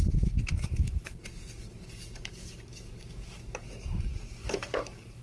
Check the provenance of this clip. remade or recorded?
remade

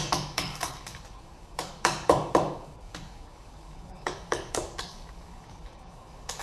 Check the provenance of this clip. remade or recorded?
remade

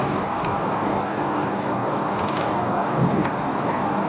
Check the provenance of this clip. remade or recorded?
remade